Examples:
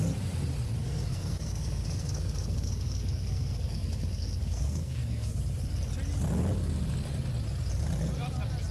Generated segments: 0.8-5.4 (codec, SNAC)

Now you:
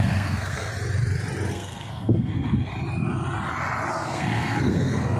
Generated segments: 0.0-0.7 (codec, SNAC); 1.5-2.7; 3.9-5.2

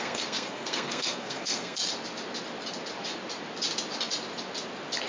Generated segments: 0.0-1.8 (codec, SNAC)

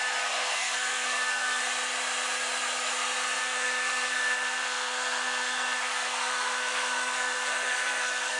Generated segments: 0.4-1.6 (codec, SNAC); 3.4-8.4

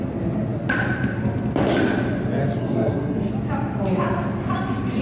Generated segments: 2.6-3.3 (codec, SNAC)

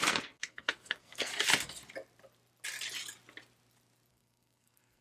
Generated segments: 0.0-1.3 (codec, SNAC); 4.1-5.0